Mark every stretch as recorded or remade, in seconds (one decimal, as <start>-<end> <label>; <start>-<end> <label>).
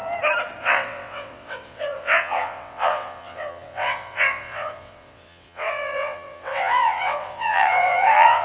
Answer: 0.0-0.6 recorded; 0.6-8.4 remade